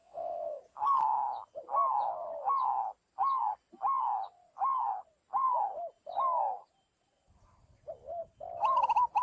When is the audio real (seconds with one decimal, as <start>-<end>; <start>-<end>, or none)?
0.6-9.2